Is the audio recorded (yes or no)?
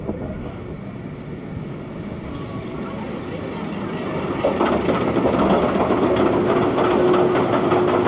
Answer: yes